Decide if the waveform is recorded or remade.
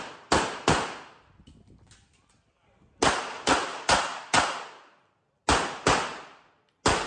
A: recorded